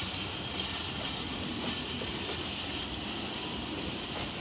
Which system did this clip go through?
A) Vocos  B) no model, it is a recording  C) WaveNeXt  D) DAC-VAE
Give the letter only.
B